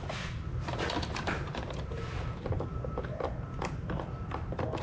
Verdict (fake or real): real